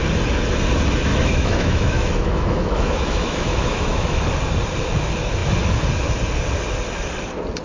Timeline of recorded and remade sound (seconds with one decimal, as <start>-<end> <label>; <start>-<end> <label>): 0.0-1.1 recorded; 1.1-4.2 remade; 4.2-7.6 recorded